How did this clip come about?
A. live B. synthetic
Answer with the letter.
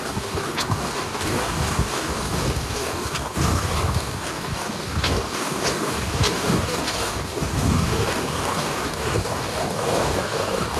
B